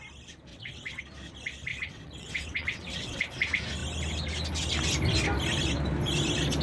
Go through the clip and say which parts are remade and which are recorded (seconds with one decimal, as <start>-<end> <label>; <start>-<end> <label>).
0.0-0.5 recorded; 0.5-1.0 remade; 1.0-1.7 recorded; 1.7-3.2 remade; 3.2-6.6 recorded